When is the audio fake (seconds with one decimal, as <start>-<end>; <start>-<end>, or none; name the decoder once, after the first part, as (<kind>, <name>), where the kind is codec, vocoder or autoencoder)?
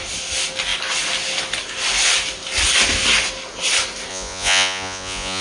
4.1-5.4 (vocoder, Vocos)